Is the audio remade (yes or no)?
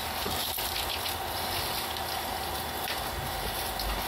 no